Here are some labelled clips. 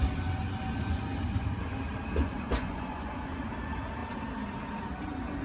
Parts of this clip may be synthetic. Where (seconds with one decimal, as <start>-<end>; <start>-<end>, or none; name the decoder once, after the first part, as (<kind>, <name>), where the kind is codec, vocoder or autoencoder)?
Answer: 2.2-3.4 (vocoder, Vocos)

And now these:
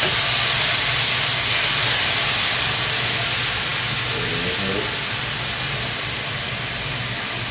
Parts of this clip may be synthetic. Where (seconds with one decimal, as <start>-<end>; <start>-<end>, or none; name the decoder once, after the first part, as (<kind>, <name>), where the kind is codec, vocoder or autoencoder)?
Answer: none

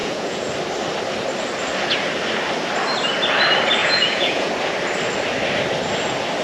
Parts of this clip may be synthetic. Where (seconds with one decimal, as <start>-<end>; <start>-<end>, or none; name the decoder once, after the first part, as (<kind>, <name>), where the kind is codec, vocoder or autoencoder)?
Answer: 0.0-0.5 (vocoder, Vocos); 3.8-4.5